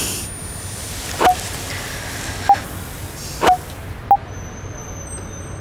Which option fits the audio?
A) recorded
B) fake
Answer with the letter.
A